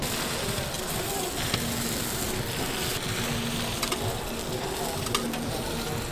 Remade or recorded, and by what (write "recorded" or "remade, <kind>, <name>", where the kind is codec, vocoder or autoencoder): recorded